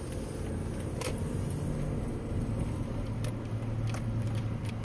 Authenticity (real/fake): real